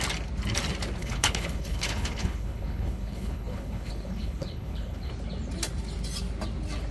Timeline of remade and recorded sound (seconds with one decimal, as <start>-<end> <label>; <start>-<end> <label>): 0.0-1.0 recorded; 1.0-5.1 remade; 5.1-6.9 recorded